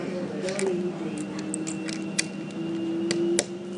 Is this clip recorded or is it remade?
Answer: recorded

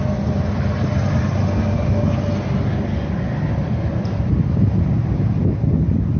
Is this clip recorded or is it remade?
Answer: recorded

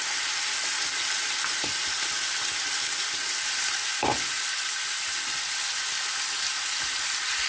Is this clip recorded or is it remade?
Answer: recorded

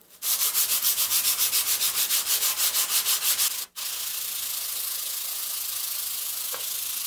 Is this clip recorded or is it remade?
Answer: recorded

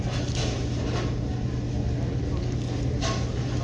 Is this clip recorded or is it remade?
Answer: recorded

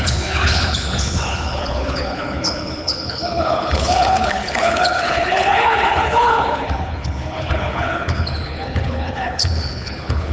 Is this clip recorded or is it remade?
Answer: remade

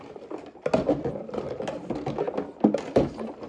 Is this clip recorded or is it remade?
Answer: recorded